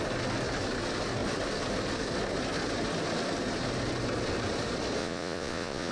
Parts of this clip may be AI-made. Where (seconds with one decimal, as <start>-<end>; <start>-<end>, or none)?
5.0-5.9